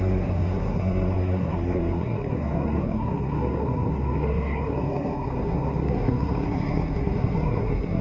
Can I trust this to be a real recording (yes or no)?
no